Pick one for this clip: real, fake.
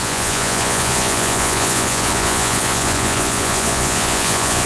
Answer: fake